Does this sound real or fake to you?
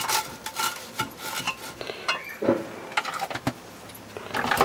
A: real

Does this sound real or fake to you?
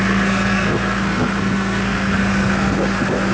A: fake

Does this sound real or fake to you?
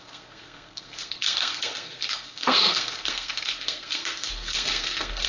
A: fake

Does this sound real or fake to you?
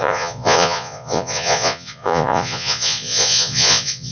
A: fake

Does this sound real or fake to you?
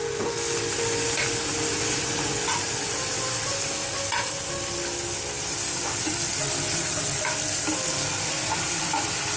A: real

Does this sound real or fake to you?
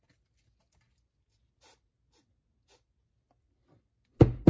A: real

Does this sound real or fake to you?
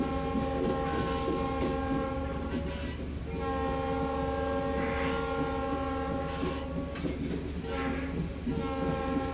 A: real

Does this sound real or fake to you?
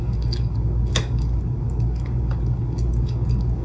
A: fake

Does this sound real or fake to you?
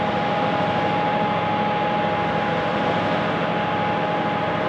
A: real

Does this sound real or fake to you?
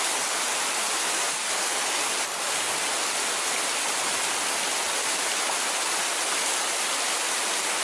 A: real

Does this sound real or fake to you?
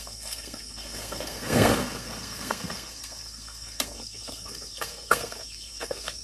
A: fake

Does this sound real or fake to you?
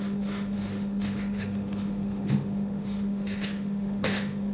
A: fake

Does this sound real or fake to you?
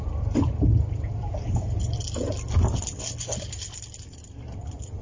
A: real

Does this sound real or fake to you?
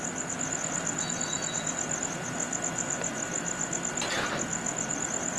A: real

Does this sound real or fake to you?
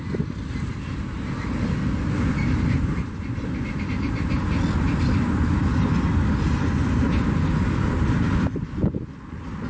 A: real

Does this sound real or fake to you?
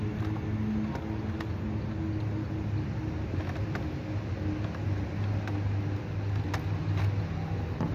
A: real